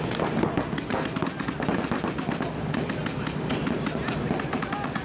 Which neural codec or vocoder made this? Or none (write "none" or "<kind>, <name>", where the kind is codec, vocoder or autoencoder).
none